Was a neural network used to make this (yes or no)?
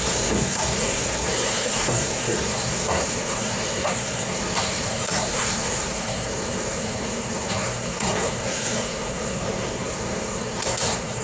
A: yes